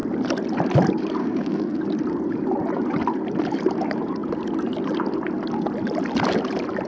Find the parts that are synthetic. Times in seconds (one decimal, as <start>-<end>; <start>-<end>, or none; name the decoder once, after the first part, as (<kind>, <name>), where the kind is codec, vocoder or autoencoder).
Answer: 1.2-1.8 (codec, SNAC)